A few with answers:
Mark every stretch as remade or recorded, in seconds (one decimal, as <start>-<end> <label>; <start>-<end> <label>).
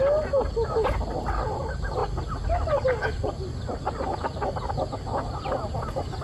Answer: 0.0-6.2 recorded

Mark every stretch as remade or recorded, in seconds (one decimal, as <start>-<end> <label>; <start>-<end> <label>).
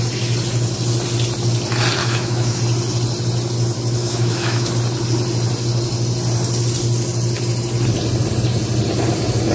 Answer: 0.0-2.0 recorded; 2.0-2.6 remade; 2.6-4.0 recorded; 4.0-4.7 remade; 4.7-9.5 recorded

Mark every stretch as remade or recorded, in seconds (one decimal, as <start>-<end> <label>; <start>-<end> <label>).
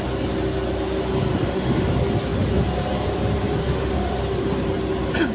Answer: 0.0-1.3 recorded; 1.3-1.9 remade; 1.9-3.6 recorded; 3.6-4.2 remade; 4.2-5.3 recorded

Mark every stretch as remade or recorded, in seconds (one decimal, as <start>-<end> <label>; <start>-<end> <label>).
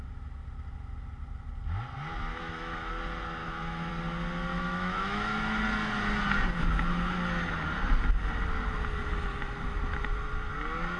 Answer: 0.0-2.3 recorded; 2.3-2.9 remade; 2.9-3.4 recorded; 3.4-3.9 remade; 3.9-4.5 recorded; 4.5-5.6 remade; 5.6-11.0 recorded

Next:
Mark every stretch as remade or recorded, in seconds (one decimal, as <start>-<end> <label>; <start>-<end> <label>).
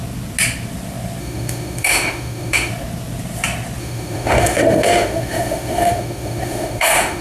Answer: 0.0-1.2 recorded; 1.2-2.7 remade; 2.7-3.8 recorded; 3.8-7.2 remade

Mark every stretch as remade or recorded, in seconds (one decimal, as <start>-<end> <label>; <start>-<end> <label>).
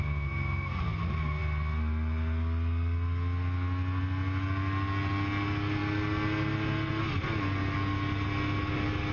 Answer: 0.0-9.1 recorded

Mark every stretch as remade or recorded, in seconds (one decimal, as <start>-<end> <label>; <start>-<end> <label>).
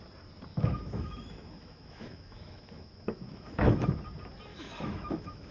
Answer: 0.0-0.5 recorded; 0.5-3.8 remade; 3.8-4.5 recorded; 4.5-5.5 remade